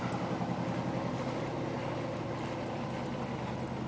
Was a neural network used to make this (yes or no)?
no